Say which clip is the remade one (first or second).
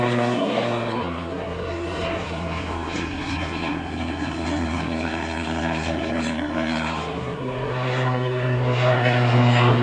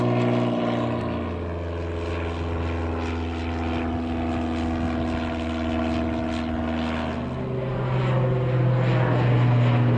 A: first